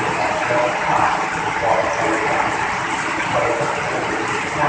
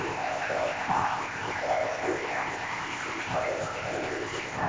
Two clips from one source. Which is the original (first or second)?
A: first